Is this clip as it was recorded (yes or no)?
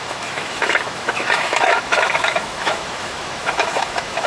no